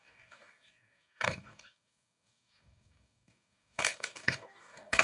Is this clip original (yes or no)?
no